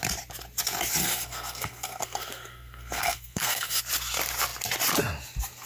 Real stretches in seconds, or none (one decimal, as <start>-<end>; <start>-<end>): 0.0-1.0; 3.8-5.7